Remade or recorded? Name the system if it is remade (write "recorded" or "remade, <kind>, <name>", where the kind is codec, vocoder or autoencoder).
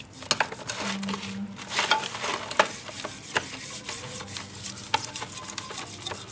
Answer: recorded